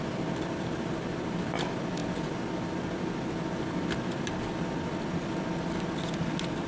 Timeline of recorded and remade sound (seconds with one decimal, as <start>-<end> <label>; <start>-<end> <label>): 0.0-6.7 recorded